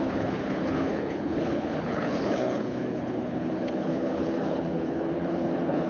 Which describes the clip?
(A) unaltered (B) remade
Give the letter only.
B